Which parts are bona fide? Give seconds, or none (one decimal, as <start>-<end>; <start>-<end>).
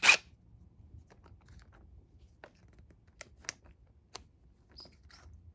0.0-5.5